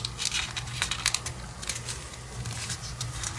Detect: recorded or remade recorded